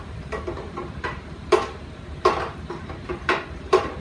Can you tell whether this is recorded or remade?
remade